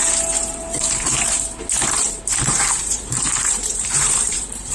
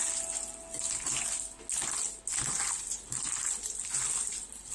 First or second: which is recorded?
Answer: second